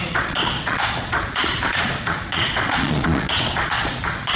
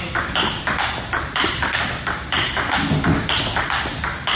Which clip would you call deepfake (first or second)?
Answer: first